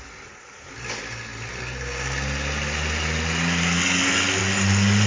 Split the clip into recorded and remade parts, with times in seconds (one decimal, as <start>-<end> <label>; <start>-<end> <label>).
0.0-5.1 recorded